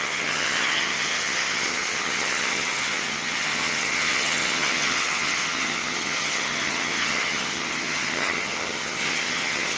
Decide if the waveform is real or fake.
fake